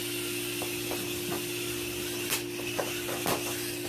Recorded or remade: recorded